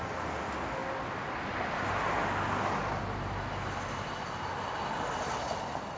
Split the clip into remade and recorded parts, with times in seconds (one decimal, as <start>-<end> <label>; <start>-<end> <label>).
0.0-6.0 recorded